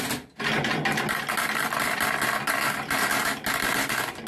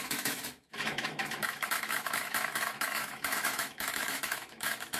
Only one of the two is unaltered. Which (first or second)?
first